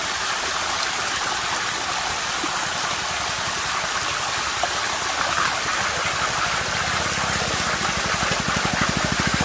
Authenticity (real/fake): real